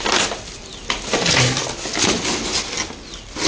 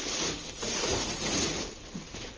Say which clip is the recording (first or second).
first